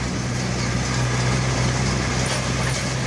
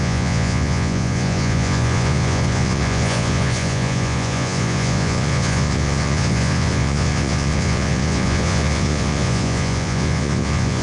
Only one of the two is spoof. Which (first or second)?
second